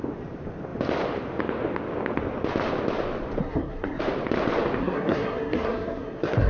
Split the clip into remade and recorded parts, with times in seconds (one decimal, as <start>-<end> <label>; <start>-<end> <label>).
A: 0.0-3.4 recorded; 3.4-4.0 remade; 4.0-4.8 recorded; 4.8-6.5 remade